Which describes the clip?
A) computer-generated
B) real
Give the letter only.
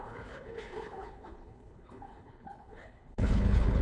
A